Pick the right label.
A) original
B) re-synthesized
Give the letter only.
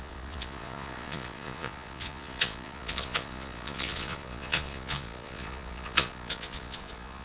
B